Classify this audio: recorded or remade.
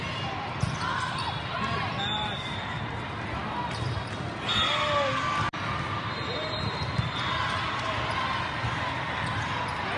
recorded